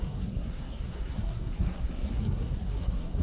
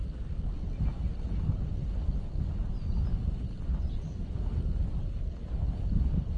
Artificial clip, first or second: first